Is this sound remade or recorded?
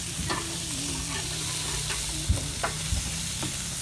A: recorded